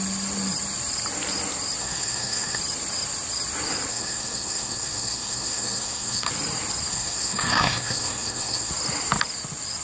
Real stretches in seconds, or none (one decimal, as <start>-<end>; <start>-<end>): 0.0-1.8; 2.6-3.9; 6.3-6.9; 8.7-9.8